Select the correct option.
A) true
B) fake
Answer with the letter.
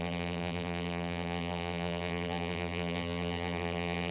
B